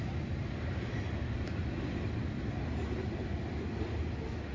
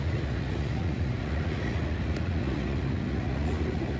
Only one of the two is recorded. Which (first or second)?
first